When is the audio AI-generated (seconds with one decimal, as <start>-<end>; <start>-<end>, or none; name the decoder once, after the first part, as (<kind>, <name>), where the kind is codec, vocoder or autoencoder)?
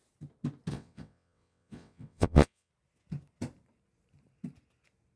0.7-2.7 (vocoder, WaveNeXt)